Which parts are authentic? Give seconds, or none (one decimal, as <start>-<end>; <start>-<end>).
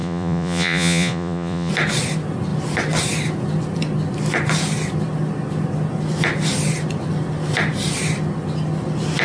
1.7-9.2